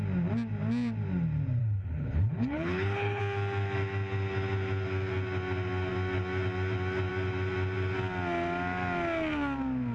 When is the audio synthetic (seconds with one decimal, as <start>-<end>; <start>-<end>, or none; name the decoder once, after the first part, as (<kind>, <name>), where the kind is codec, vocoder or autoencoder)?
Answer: 1.6-3.2 (codec, HILCodec)